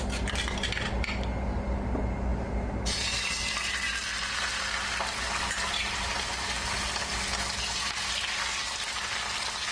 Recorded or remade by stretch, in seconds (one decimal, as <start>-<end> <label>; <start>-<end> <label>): 0.0-9.7 recorded